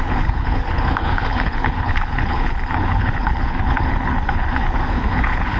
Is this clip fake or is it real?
fake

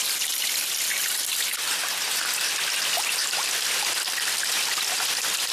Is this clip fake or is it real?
fake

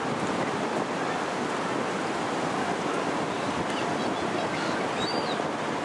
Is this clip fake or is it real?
real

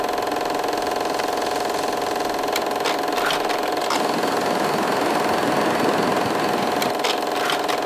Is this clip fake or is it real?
real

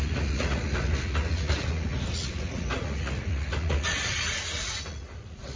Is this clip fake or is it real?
fake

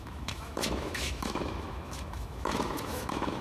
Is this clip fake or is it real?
fake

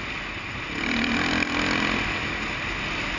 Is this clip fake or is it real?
real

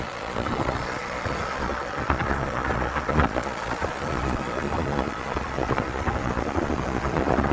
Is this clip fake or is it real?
fake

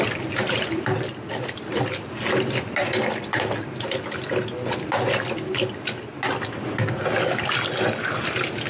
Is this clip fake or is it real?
real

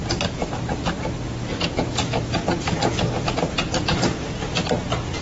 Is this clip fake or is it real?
real